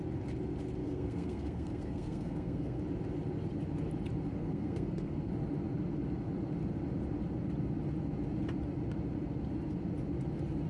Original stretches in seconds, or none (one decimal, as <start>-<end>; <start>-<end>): 0.0-0.8; 2.8-4.4; 5.3-10.7